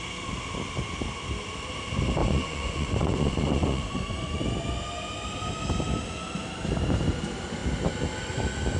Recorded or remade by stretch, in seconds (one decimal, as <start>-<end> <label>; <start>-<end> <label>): 0.0-2.2 recorded; 2.2-4.4 remade; 4.4-8.8 recorded